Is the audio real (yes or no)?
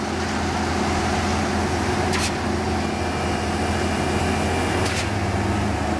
yes